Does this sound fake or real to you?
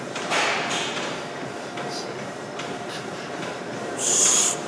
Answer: fake